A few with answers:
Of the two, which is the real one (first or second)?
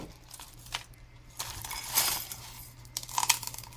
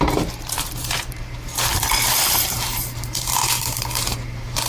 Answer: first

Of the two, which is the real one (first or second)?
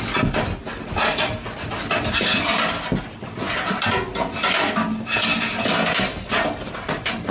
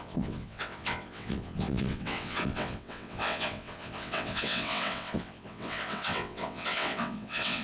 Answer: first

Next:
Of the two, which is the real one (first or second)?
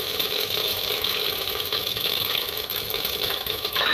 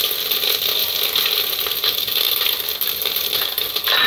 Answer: second